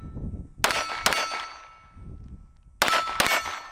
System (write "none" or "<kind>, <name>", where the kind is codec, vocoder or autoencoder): none